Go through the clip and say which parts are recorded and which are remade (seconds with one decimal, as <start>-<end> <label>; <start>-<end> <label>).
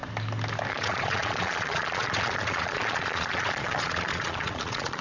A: 0.0-0.7 recorded; 0.7-5.0 remade